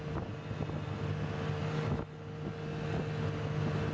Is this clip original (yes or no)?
yes